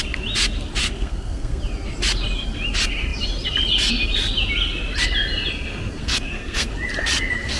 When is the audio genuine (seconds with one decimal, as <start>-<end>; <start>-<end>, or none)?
0.0-0.8; 1.6-6.0; 6.7-7.6